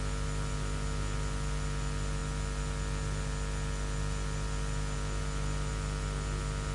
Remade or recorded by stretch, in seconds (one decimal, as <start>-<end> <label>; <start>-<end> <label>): 0.0-6.7 recorded